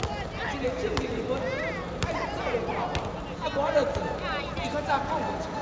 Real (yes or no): yes